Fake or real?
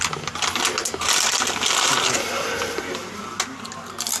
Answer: real